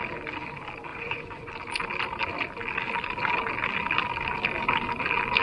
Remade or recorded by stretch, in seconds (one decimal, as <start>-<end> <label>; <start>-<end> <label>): 0.0-0.9 recorded; 0.9-1.5 remade; 1.5-5.4 recorded